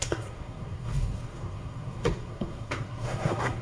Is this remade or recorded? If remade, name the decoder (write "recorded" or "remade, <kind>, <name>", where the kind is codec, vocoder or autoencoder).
remade, codec, SNAC